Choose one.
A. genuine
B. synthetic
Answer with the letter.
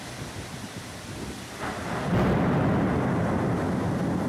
A